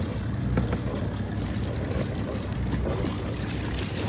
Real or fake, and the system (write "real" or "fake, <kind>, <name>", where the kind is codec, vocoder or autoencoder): real